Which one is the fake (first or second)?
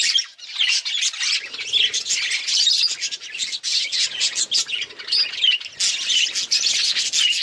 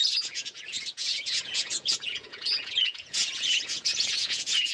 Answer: second